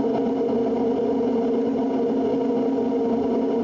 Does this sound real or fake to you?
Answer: real